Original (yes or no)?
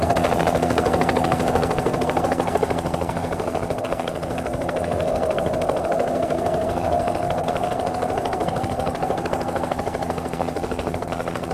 no